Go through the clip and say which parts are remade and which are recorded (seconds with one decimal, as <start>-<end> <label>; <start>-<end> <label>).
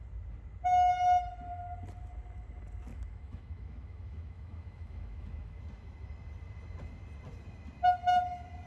0.0-2.9 recorded; 2.9-5.6 remade; 5.6-8.7 recorded